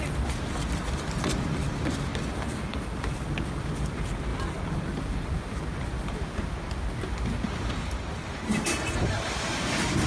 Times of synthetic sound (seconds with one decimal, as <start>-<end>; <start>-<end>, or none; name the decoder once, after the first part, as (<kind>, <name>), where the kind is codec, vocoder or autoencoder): none